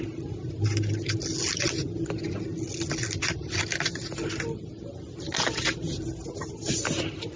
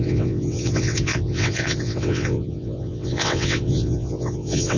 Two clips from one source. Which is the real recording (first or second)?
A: first